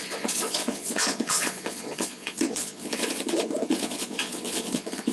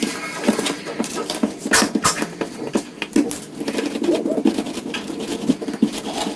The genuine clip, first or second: second